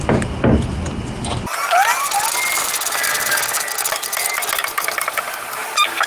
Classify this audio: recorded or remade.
recorded